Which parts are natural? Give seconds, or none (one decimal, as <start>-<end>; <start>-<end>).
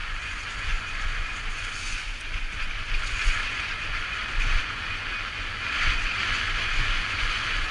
none